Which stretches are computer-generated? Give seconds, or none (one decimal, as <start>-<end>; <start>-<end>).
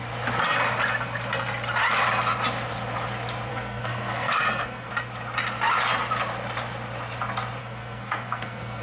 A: 3.5-4.9; 7.6-8.8